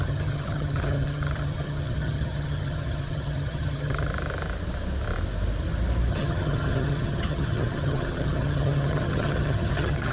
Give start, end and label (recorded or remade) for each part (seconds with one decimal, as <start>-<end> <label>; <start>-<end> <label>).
0.0-4.1 remade; 4.1-6.1 recorded; 6.1-10.1 remade